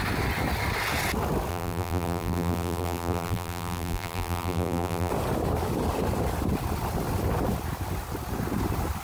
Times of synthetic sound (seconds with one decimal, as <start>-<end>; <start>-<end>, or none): 1.5-5.1